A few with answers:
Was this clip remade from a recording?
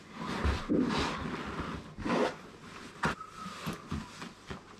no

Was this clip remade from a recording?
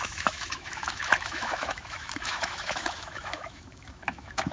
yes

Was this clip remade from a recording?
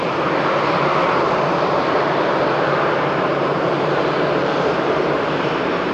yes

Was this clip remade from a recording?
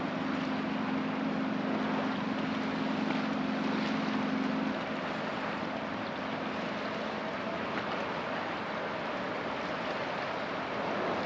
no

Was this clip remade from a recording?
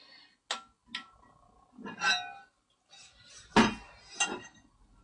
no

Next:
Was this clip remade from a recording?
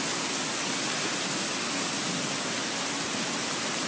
no